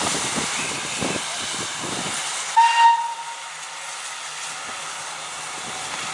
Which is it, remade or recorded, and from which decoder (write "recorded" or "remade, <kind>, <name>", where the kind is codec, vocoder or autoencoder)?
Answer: recorded